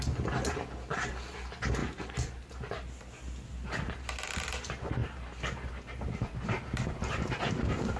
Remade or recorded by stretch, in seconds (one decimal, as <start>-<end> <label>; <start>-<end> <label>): 0.0-8.0 recorded

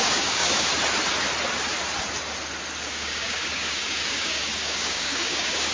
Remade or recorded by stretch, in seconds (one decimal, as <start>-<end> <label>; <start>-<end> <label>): 0.0-0.7 remade; 0.7-2.8 recorded; 2.8-5.7 remade

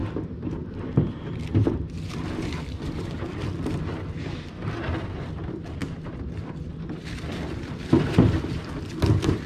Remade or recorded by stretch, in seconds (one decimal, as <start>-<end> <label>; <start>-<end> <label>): 0.0-9.5 remade

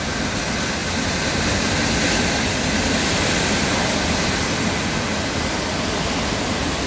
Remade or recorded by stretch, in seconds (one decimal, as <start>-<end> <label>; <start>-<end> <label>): 0.0-6.9 recorded

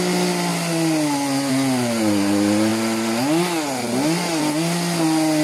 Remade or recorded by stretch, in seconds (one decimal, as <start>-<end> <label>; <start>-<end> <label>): 0.0-5.4 recorded

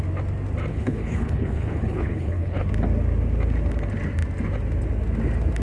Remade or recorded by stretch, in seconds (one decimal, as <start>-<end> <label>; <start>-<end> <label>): 0.0-0.7 recorded; 0.7-2.7 remade; 2.7-5.6 recorded